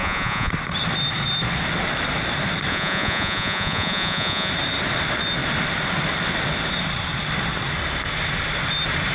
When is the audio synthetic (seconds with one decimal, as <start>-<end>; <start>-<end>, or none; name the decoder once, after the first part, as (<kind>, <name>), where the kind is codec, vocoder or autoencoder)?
0.0-0.5 (vocoder, Vocos); 2.7-4.5

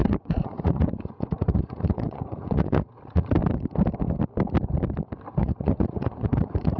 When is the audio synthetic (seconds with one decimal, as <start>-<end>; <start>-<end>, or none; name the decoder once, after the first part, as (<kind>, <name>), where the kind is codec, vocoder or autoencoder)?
0.0-3.4 (vocoder, Vocos); 5.4-6.8

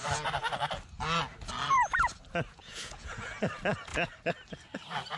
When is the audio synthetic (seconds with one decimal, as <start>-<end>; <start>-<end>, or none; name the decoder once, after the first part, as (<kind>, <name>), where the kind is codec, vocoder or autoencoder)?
2.5-3.4 (vocoder, Vocos)

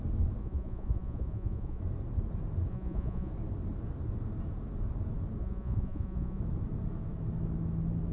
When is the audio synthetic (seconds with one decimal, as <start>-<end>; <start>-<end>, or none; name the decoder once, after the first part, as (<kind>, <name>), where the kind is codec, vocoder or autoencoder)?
0.4-1.8 (vocoder, Vocos); 2.7-3.3; 5.4-6.4

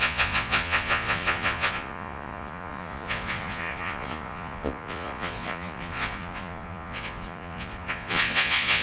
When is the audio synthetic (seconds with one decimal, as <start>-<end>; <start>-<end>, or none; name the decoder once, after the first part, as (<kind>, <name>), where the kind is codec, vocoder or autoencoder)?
0.0-8.8 (vocoder, Vocos)

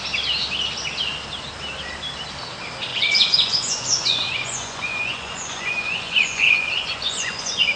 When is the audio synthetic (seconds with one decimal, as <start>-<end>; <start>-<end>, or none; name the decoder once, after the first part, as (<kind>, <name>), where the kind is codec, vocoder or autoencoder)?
2.9-7.8 (vocoder, Vocos)

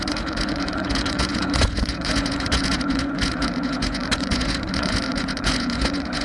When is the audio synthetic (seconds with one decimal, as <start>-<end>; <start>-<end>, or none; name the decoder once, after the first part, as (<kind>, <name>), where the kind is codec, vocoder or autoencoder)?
0.0-6.2 (vocoder, Vocos)

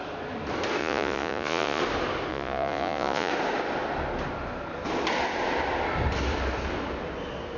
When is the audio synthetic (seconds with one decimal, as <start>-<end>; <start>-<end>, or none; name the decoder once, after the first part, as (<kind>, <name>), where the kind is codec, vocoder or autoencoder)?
0.8-1.8 (vocoder, Vocos); 2.3-3.3